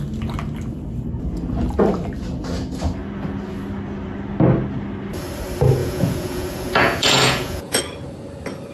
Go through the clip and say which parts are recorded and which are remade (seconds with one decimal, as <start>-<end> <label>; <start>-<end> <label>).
0.0-5.8 recorded; 5.8-7.8 remade; 7.8-8.7 recorded